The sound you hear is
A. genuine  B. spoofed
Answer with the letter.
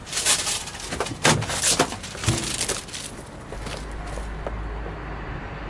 A